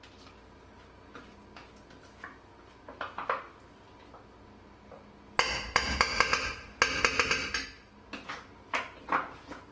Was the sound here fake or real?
real